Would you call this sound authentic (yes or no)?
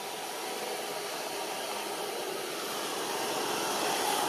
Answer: yes